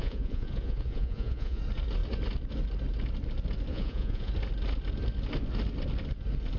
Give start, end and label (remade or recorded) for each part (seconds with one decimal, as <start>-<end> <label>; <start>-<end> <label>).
0.0-1.6 remade; 1.6-3.7 recorded; 3.7-4.3 remade; 4.3-6.6 recorded

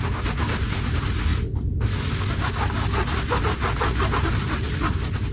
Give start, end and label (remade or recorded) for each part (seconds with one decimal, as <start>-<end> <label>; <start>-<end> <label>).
0.0-5.3 recorded

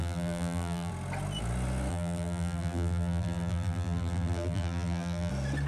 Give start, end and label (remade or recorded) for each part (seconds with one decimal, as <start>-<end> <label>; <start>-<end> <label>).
0.0-0.9 remade; 0.9-1.9 recorded; 1.9-5.3 remade; 5.3-5.7 recorded

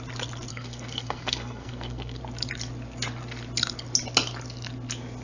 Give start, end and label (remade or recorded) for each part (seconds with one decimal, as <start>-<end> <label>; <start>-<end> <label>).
0.0-0.5 recorded; 0.5-2.2 remade; 2.2-5.2 recorded